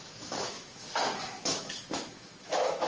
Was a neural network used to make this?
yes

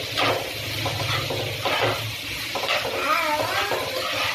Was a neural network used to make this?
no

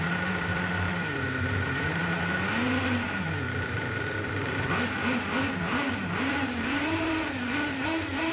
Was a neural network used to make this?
yes